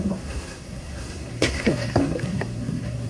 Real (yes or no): no